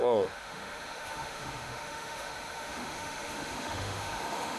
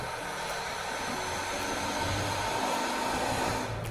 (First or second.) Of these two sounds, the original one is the second